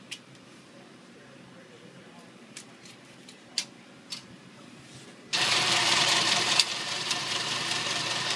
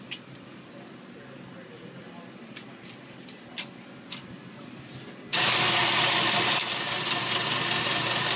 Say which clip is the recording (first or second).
second